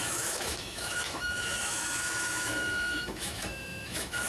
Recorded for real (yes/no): no